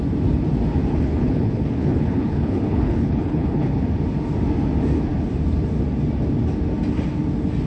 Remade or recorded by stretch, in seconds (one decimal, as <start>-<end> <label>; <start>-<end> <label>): 0.0-0.9 recorded; 0.9-3.8 remade; 3.8-7.7 recorded